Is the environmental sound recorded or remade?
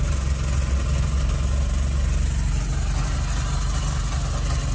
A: recorded